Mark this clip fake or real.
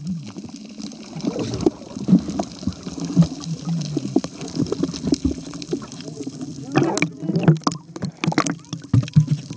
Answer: real